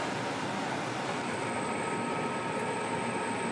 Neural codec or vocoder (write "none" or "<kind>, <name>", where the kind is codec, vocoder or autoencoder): none